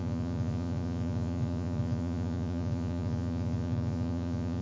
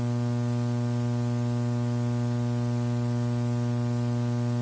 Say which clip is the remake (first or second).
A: first